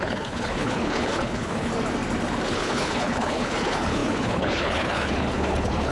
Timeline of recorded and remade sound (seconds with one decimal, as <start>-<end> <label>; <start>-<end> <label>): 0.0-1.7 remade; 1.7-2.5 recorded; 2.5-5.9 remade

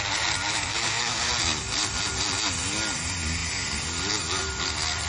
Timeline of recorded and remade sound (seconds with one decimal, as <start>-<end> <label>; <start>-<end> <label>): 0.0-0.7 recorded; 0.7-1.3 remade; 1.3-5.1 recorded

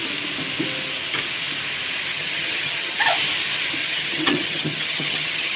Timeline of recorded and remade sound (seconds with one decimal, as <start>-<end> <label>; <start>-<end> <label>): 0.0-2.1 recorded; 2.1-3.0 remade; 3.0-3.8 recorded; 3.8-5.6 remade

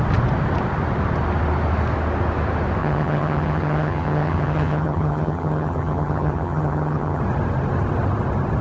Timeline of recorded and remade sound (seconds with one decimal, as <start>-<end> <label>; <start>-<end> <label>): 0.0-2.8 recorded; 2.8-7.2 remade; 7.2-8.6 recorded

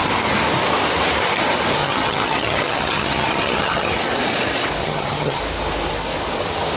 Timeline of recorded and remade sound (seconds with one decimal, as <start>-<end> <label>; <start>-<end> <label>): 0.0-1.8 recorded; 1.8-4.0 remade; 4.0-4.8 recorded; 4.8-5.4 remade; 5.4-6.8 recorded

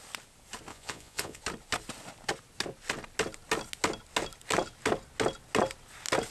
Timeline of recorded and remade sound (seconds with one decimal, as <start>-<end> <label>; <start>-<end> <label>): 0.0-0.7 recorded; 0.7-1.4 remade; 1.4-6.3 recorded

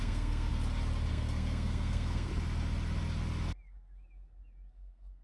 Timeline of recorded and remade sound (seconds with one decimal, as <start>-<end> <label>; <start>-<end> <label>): 0.0-0.5 remade; 0.5-1.1 recorded; 1.1-2.3 remade; 2.3-4.7 recorded; 4.7-5.2 remade